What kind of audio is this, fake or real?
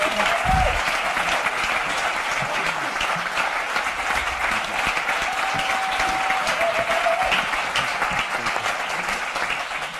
real